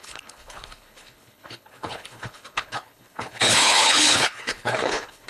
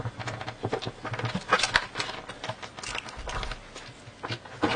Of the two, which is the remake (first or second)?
first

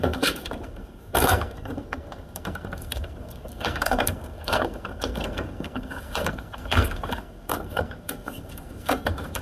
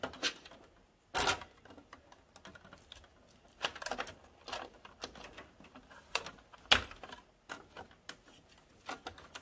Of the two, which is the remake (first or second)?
first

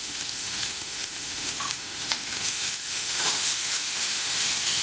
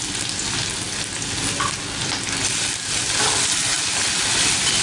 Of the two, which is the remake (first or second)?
first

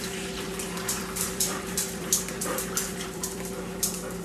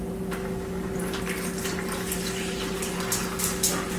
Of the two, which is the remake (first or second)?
first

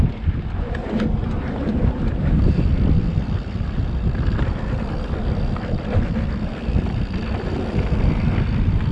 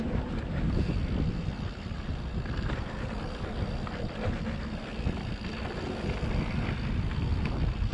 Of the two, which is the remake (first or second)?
first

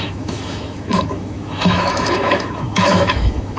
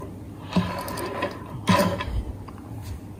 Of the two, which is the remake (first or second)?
first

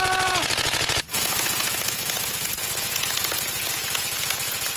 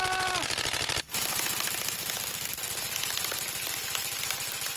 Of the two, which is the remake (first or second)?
first